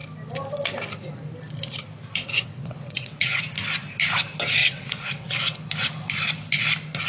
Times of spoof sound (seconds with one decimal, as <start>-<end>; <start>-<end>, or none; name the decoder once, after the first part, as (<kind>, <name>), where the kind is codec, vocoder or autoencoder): 2.3-3.4 (vocoder, WaveNeXt); 4.6-5.4